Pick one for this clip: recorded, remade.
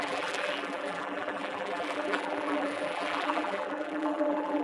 remade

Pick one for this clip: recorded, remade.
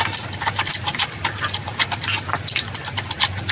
recorded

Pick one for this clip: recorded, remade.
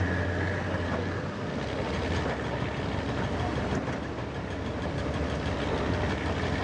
recorded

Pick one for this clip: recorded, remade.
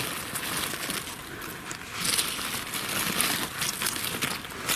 recorded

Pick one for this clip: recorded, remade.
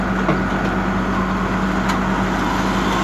recorded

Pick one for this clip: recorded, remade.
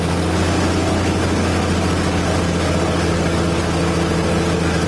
recorded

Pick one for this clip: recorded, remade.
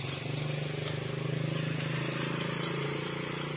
recorded